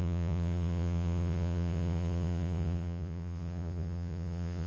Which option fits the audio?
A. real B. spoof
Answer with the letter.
B